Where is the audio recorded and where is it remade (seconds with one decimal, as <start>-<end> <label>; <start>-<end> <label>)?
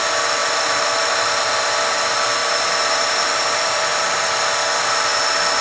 0.0-0.4 recorded; 0.4-2.0 remade; 2.0-2.4 recorded; 2.4-4.4 remade; 4.4-5.6 recorded